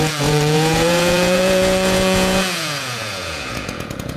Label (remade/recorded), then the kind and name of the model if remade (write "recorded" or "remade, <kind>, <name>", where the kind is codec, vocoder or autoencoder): remade, vocoder, Vocos